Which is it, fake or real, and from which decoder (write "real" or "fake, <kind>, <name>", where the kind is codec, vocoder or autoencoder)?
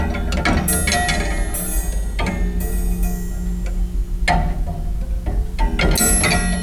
real